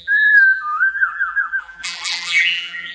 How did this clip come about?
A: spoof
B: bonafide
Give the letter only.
A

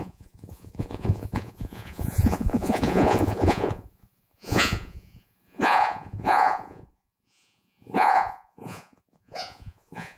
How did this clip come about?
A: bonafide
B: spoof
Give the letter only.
B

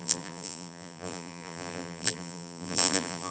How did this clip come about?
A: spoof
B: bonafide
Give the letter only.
A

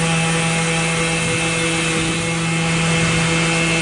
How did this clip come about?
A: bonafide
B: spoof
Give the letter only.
A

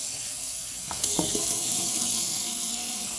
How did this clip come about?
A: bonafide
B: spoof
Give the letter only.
B